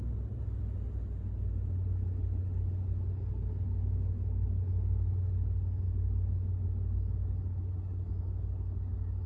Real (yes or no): yes